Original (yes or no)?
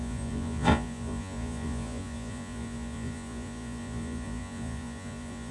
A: no